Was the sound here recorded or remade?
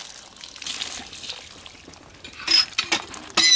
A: recorded